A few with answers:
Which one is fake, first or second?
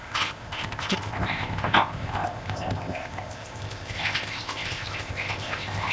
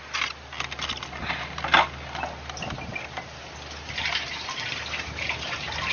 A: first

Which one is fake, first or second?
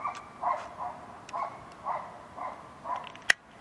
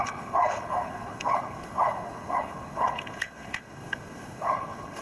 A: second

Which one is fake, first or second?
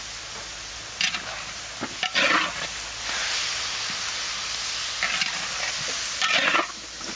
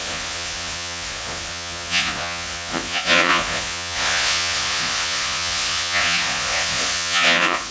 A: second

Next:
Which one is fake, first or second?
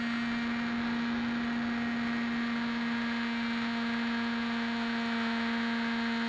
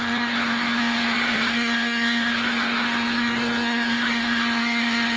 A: second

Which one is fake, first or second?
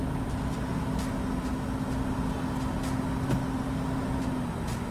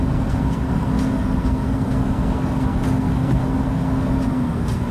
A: second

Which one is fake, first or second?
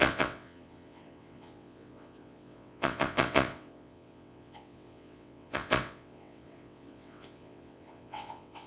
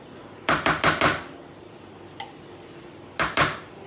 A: first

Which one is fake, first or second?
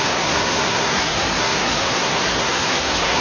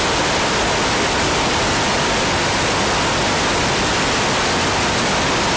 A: first